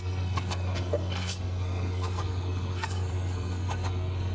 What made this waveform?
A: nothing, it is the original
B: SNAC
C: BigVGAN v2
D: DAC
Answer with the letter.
B